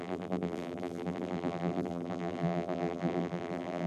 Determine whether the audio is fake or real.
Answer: fake